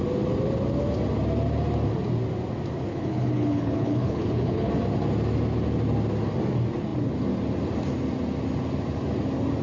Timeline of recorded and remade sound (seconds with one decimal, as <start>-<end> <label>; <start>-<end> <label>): 0.0-2.9 recorded; 2.9-4.7 remade; 4.7-9.6 recorded